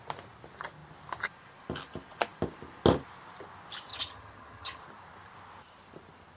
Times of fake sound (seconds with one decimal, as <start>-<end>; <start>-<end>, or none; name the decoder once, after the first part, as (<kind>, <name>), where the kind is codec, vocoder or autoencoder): 3.9-4.8 (vocoder, HiFi-GAN)